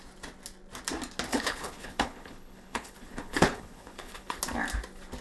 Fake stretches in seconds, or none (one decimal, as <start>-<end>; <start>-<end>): 1.3-4.4